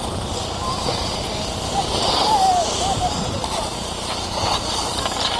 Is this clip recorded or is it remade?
recorded